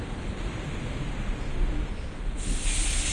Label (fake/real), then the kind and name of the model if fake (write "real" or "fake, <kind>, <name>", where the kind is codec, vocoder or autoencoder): real